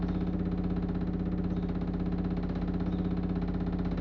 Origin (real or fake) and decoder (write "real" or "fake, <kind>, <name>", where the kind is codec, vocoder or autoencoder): real